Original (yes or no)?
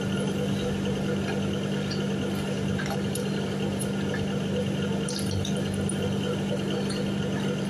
yes